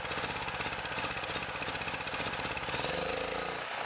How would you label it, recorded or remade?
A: recorded